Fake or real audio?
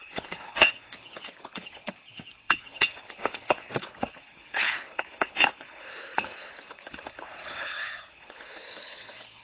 fake